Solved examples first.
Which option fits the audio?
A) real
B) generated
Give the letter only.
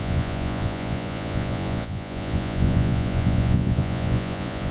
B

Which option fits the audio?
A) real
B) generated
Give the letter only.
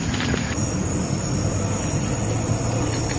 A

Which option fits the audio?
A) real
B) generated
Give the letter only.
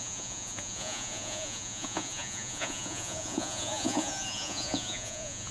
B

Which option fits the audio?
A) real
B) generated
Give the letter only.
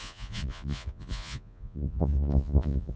B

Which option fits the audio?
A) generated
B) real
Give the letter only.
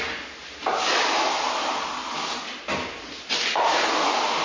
B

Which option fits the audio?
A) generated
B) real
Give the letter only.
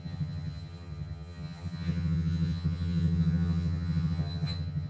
A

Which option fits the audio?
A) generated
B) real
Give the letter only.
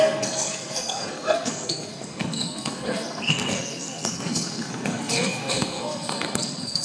A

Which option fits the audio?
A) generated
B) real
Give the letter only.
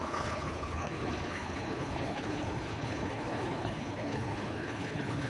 A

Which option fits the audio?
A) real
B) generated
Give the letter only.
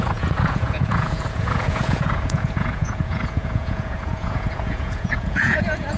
B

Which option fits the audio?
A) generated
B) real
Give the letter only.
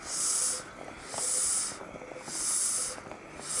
B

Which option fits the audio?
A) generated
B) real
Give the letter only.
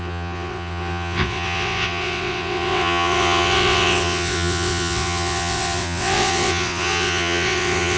A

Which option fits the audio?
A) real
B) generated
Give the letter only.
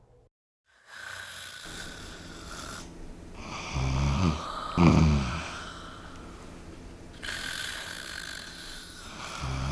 A